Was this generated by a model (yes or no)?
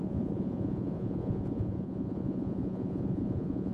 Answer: yes